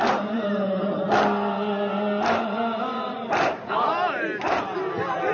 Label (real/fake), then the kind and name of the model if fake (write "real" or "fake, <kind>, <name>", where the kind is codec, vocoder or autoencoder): real